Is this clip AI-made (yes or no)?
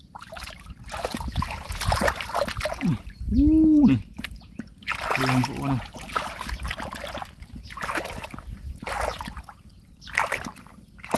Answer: no